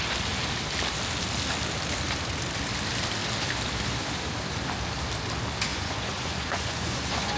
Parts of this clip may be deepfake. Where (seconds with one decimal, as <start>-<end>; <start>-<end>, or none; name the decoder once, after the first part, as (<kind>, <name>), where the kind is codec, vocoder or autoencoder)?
5.7-7.4 (vocoder, Vocos)